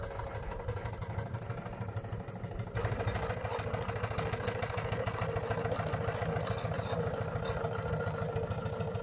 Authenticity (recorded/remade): recorded